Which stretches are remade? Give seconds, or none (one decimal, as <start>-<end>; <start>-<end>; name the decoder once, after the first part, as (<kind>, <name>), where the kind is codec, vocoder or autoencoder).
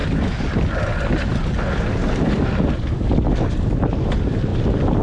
none